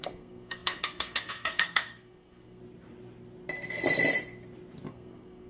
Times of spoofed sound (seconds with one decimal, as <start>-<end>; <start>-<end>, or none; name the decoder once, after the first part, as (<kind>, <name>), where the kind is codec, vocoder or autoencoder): 0.0-2.6 (codec, SNAC); 4.9-5.5